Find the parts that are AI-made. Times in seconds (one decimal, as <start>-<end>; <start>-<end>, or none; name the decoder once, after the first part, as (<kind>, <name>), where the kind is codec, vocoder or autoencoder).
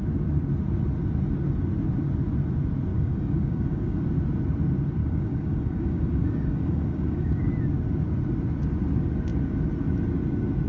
2.9-4.0 (codec, DAC); 5.0-7.5